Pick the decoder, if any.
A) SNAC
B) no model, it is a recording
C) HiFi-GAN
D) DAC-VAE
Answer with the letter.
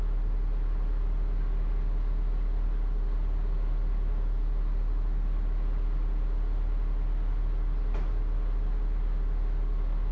B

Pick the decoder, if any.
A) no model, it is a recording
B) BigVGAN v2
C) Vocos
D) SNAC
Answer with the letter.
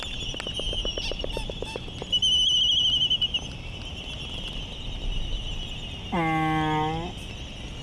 A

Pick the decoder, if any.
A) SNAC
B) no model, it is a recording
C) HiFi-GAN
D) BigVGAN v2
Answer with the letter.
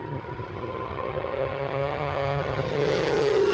C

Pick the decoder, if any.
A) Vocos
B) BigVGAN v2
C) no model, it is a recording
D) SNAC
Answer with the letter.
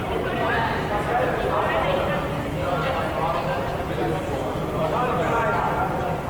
B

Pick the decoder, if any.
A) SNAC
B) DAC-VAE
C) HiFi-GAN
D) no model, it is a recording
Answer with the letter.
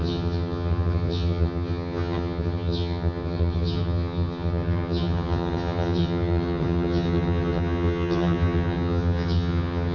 C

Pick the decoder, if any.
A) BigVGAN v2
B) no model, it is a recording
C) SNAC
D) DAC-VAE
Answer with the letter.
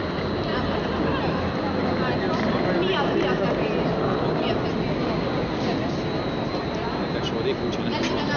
B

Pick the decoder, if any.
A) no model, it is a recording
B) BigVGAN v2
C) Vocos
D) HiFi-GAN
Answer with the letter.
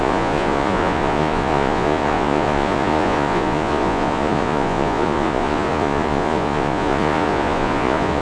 C